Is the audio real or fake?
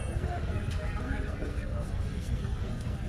fake